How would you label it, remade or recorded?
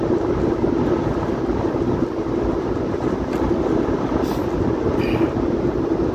recorded